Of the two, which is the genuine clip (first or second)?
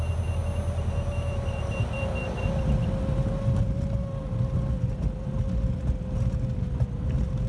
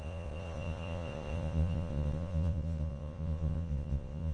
first